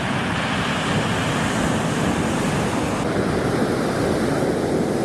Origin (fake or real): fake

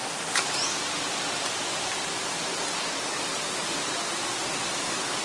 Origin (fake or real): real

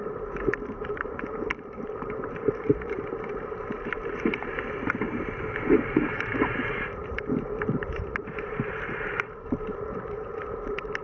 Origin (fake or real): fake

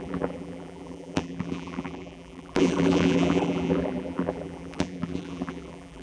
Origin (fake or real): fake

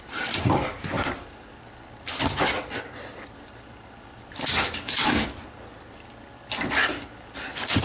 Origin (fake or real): fake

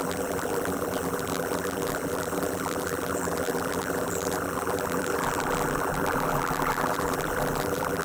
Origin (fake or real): fake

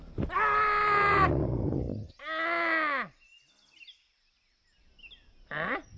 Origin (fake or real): real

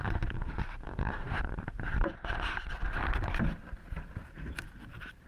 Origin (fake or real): fake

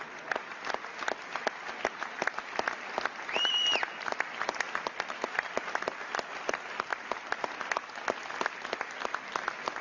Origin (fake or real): real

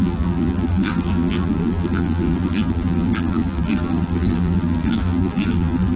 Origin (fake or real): fake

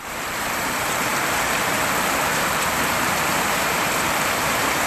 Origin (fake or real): fake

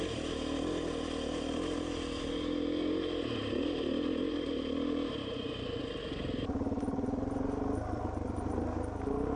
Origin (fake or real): fake